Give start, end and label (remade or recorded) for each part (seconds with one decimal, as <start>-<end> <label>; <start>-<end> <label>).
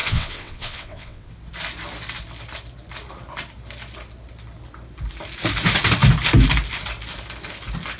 0.0-1.3 remade; 1.3-8.0 recorded